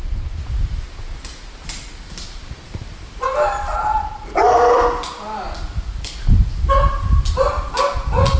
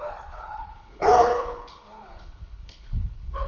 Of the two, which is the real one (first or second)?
first